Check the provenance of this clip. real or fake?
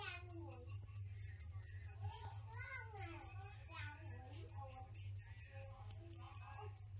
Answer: real